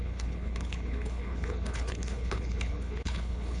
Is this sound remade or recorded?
remade